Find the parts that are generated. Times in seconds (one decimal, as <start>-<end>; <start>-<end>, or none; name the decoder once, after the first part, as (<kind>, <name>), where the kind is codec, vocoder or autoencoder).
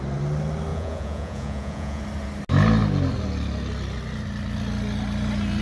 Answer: 0.7-2.0 (vocoder, Vocos)